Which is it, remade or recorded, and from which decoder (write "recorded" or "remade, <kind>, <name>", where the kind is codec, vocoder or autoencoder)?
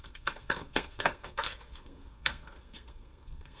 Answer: remade, codec, SNAC